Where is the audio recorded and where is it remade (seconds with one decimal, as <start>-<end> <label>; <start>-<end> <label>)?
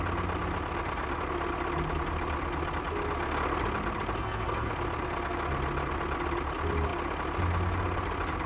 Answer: 0.0-4.2 recorded; 4.2-4.7 remade; 4.7-8.5 recorded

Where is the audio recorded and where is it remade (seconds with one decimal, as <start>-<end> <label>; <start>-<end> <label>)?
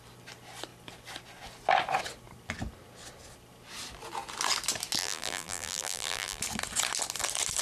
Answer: 0.0-5.0 recorded; 5.0-6.4 remade; 6.4-7.6 recorded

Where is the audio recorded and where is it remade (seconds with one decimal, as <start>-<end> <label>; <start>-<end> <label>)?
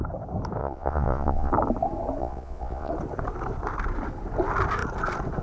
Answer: 0.0-0.6 recorded; 0.6-1.5 remade; 1.5-2.2 recorded; 2.2-2.9 remade; 2.9-5.4 recorded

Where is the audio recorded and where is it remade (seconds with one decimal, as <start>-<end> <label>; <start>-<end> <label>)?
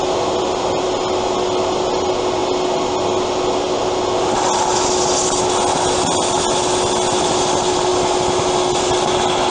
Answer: 0.0-9.5 recorded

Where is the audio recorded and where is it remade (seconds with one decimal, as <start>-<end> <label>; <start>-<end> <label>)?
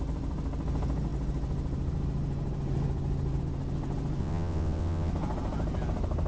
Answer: 0.0-4.2 recorded; 4.2-5.1 remade; 5.1-6.3 recorded